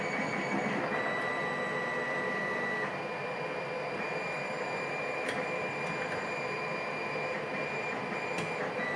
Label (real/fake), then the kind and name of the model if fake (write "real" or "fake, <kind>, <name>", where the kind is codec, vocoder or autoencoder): fake, vocoder, BigVGAN v2